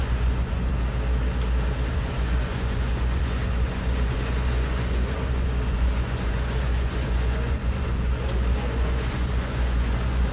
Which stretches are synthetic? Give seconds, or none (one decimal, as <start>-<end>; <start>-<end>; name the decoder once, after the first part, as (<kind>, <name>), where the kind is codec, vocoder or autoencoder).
0.0-0.7 (vocoder, Vocos); 1.9-10.3